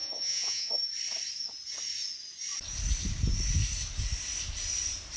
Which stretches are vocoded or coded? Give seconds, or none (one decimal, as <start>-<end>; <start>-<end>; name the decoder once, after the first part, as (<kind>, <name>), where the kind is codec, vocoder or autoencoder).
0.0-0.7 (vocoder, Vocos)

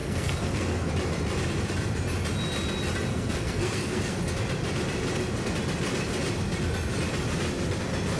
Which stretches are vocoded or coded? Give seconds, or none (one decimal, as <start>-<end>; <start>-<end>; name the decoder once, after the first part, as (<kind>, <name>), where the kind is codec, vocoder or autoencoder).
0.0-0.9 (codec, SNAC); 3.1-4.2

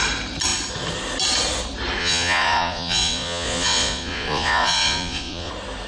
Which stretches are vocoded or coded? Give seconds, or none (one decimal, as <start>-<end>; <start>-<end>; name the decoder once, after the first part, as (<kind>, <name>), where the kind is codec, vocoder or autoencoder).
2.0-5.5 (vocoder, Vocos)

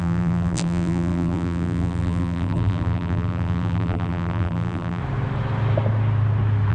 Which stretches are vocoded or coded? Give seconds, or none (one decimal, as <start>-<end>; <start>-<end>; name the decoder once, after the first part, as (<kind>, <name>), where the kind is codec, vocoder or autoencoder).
0.0-5.0 (vocoder, BigVGAN v2)

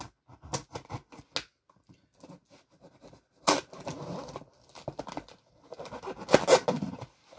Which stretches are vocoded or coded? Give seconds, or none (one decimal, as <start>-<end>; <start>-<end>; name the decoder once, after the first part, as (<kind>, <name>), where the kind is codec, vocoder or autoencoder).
none

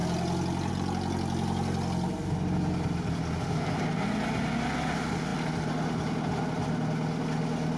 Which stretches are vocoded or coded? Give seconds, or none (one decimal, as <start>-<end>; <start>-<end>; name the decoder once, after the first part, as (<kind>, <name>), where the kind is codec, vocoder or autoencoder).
none

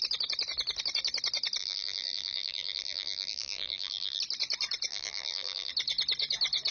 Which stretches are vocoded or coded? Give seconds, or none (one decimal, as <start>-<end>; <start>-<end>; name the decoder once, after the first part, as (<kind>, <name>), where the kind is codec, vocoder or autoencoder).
1.6-4.2 (vocoder, BigVGAN v2); 4.9-5.7